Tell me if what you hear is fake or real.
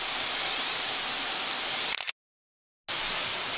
real